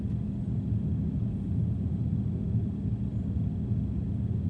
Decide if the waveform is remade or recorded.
recorded